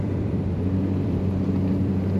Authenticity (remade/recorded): remade